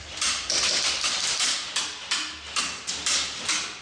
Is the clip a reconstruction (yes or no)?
no